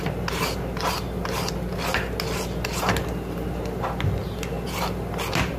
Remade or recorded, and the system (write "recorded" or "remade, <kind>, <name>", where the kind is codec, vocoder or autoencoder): recorded